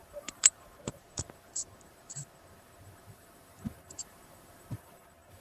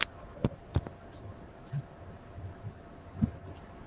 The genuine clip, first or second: second